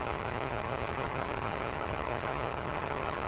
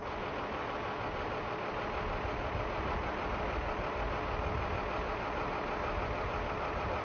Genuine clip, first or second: second